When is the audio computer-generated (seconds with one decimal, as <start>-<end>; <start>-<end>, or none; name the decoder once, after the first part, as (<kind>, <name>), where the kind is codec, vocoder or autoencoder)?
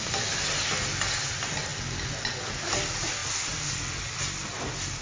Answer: none